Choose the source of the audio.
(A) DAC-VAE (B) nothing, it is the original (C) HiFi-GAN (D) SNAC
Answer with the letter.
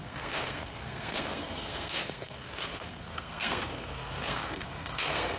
D